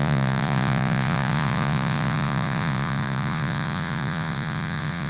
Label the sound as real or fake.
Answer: fake